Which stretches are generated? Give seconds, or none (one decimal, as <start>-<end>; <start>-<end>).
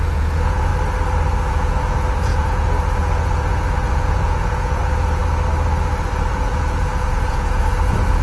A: 0.0-0.7; 1.5-5.2; 6.3-8.2